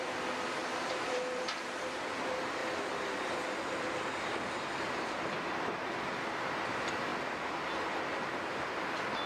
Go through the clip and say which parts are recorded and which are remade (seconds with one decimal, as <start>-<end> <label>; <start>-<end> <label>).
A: 0.0-0.6 recorded; 0.6-2.1 remade; 2.1-9.3 recorded